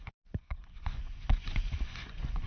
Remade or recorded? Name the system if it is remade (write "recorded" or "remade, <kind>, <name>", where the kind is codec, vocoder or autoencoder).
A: remade, vocoder, Vocos